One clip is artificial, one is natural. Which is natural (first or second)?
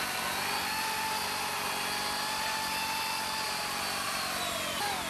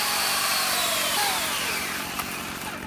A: first